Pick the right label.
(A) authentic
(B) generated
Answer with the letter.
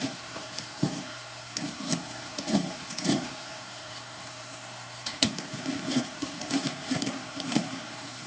B